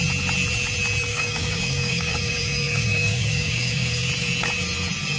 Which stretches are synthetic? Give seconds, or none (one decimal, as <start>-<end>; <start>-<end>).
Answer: 1.1-4.1